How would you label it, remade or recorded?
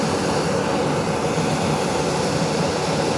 recorded